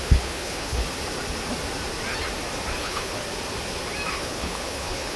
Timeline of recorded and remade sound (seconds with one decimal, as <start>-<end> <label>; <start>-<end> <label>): 0.0-0.8 remade; 0.8-2.8 recorded; 2.8-3.2 remade; 3.2-4.1 recorded; 4.1-5.2 remade